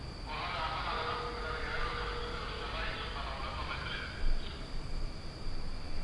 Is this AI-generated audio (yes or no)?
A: no